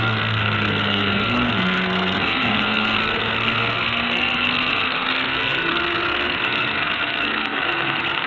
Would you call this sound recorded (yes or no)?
no